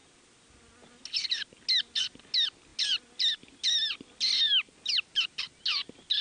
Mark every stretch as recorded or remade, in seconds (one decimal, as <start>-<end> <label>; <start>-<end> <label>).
0.0-6.2 recorded